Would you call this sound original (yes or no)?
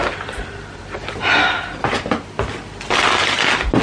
yes